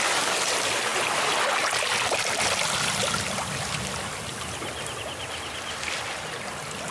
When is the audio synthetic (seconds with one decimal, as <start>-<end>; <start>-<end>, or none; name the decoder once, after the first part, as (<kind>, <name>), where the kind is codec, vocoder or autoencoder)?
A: none